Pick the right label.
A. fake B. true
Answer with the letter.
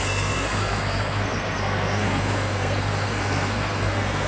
A